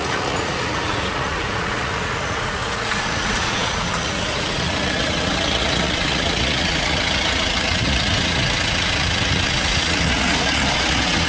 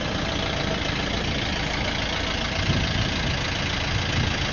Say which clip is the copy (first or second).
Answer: first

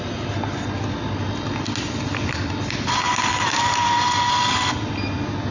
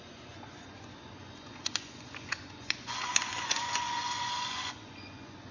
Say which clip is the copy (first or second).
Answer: second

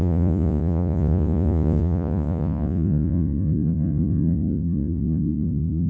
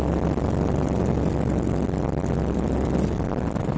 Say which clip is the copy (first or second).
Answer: first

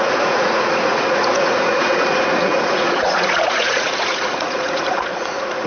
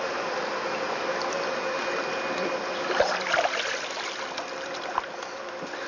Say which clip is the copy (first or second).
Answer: first